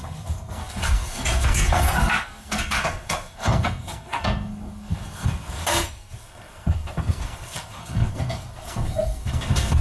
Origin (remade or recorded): remade